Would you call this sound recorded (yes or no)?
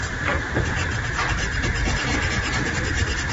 no